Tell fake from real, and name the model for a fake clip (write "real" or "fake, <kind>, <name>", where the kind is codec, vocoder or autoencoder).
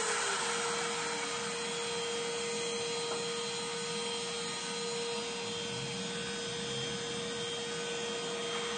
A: real